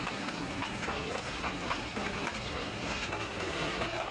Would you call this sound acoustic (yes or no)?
no